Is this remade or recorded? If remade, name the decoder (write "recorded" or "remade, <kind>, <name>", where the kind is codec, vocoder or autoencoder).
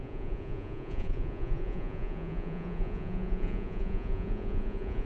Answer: remade, vocoder, Vocos